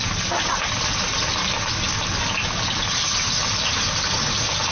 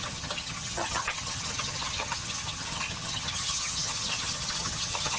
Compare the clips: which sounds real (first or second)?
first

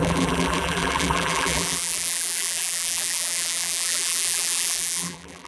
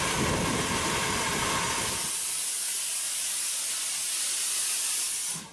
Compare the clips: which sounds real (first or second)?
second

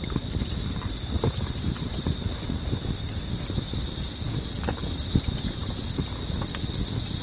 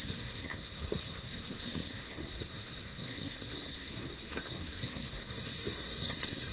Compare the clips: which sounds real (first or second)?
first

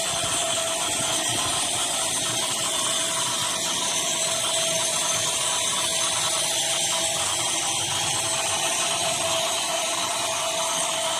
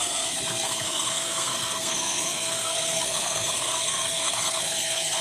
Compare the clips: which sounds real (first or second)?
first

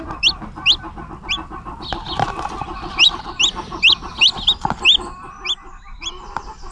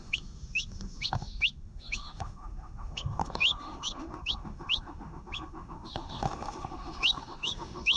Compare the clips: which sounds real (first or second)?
first